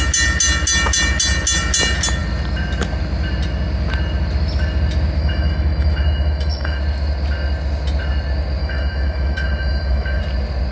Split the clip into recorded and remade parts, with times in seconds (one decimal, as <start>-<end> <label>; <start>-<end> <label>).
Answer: 0.0-5.2 recorded; 5.2-6.8 remade; 6.8-8.6 recorded; 8.6-10.2 remade; 10.2-10.7 recorded